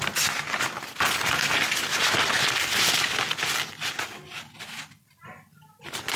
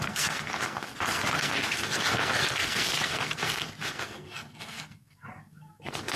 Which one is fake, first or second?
second